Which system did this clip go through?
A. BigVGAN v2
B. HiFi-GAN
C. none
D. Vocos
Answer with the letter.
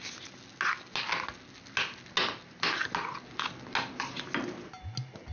C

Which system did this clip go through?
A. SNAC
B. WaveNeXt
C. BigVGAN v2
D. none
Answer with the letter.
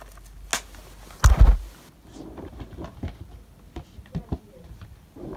D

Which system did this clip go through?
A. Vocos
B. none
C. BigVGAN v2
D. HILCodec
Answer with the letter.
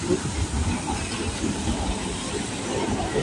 B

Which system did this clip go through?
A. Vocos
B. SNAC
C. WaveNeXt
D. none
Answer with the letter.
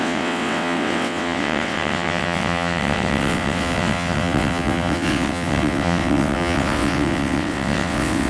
C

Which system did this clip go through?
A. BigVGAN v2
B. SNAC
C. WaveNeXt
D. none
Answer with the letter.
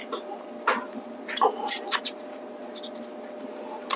D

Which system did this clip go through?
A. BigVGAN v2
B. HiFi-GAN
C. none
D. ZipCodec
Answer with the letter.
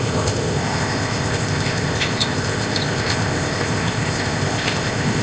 D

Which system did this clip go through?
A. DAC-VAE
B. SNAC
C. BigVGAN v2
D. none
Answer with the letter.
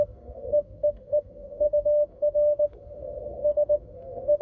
B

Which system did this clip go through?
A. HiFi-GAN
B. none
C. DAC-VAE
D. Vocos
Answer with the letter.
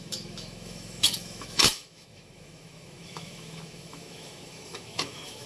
C